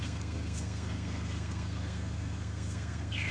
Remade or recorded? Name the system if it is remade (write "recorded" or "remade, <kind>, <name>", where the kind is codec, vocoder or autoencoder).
remade, codec, SNAC